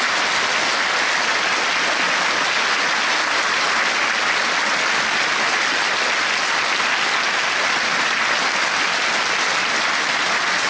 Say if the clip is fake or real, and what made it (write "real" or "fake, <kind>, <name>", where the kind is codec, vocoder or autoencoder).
real